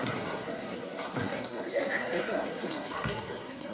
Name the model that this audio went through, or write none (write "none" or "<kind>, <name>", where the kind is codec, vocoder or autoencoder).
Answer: codec, SNAC